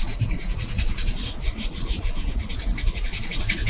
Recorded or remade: remade